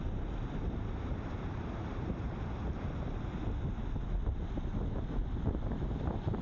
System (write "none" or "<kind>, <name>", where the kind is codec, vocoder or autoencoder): none